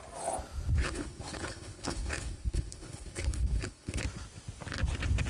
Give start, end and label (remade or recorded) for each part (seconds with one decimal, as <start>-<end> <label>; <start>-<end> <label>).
0.0-0.8 recorded; 0.8-4.0 remade; 4.0-5.3 recorded